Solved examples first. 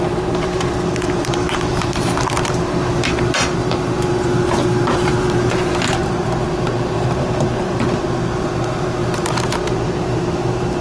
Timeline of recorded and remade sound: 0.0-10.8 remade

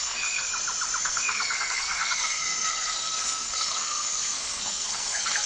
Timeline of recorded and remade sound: 0.0-0.5 remade; 0.5-1.0 recorded; 1.0-5.5 remade

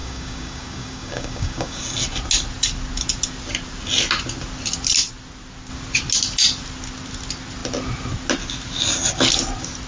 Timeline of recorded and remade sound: 0.0-1.8 remade; 1.8-9.9 recorded

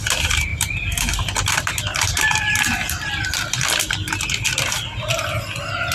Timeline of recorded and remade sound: 0.0-0.5 recorded; 0.5-3.7 remade; 3.7-5.9 recorded

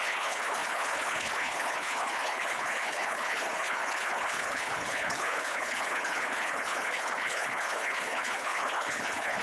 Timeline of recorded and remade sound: 0.0-9.4 remade